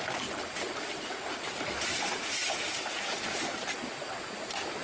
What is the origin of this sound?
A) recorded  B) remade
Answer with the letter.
A